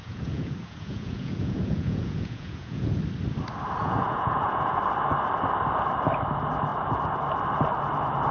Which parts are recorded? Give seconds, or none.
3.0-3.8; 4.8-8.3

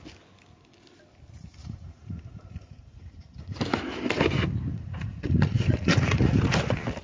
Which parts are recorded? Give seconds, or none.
0.0-1.6; 3.6-4.7; 6.4-7.0